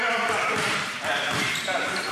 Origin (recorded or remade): remade